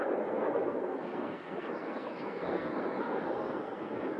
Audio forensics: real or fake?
fake